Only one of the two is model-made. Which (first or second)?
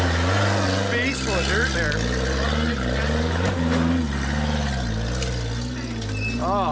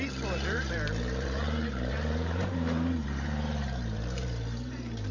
second